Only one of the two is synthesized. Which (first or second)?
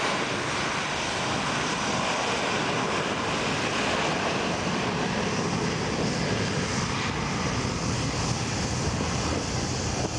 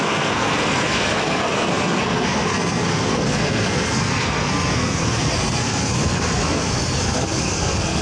second